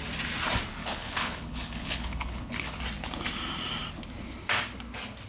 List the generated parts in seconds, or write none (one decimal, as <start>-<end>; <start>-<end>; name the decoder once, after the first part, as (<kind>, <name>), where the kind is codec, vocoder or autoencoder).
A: 0.7-2.8 (codec, HILCodec)